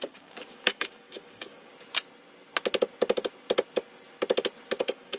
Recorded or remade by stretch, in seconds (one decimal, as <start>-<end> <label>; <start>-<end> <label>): 0.0-1.7 remade; 1.7-4.8 recorded; 4.8-5.2 remade